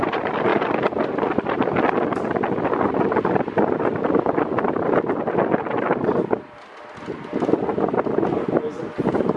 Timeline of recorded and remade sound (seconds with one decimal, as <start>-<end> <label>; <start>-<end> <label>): 0.0-9.4 recorded